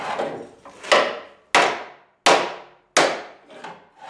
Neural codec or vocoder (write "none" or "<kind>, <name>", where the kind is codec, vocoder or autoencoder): none